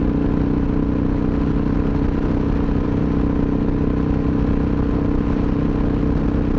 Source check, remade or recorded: recorded